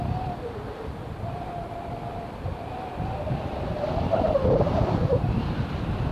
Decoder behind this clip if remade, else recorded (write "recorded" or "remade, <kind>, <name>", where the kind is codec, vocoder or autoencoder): recorded